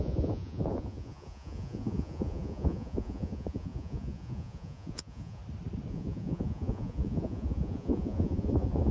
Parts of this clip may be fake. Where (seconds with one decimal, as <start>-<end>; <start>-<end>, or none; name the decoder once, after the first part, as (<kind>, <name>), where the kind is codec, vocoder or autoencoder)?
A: 0.0-5.4 (vocoder, Vocos); 5.9-8.9